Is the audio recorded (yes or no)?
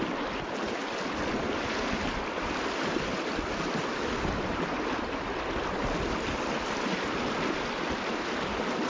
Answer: yes